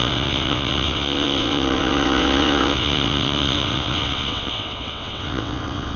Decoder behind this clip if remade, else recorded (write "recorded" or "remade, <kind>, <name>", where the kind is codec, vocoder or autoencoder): remade, vocoder, WaveNeXt